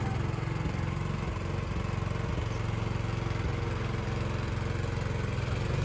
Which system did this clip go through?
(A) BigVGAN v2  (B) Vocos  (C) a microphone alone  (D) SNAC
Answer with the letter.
C